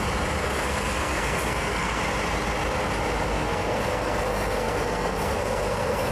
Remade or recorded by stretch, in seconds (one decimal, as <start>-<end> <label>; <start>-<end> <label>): 0.0-0.4 recorded; 0.4-2.0 remade; 2.0-3.3 recorded; 3.3-6.1 remade